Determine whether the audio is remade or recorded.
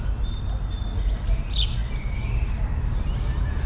recorded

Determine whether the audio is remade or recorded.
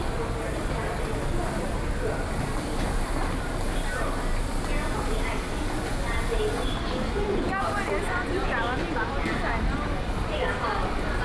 recorded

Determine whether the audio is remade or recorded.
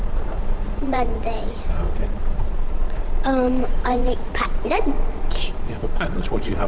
remade